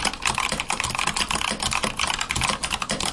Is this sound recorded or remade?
recorded